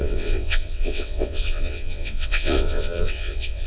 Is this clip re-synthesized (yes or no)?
yes